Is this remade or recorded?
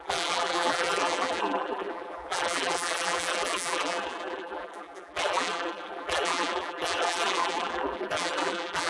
remade